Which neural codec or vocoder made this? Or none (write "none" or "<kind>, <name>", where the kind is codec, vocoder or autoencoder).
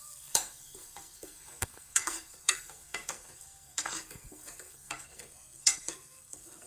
codec, SNAC